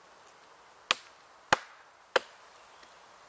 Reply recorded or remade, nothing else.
recorded